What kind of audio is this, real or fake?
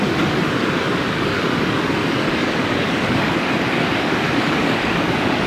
fake